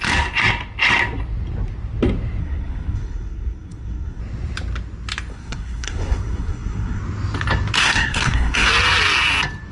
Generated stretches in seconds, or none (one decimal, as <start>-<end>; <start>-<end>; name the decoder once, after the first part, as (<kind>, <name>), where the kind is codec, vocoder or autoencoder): 2.4-4.2 (codec, SNAC); 5.3-7.0; 7.8-8.7